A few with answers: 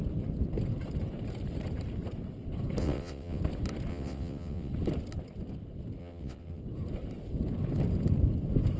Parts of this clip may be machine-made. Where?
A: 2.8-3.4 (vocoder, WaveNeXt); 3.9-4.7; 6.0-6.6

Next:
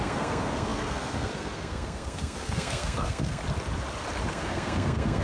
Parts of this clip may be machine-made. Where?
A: 0.0-3.4 (codec, SNAC); 4.3-5.2

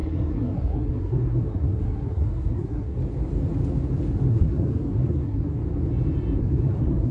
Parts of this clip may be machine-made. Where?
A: 0.0-3.0 (codec, SNAC); 4.3-5.6; 6.4-7.1

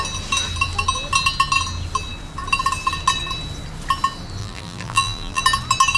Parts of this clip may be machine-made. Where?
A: 4.4-5.4 (vocoder, BigVGAN v2)

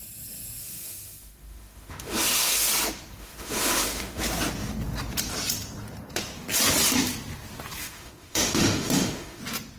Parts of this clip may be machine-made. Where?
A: 0.6-2.7 (autoencoder, DAC-VAE); 3.2-4.2; 7.8-9.4

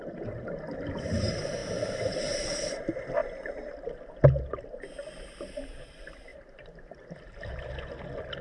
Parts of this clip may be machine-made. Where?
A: none

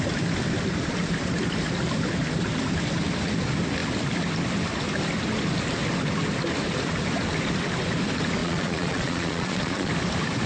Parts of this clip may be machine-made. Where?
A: 8.4-9.9 (vocoder, Vocos)